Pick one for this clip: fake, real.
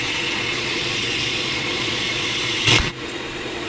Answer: fake